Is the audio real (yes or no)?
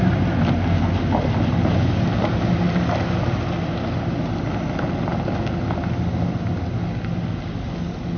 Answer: yes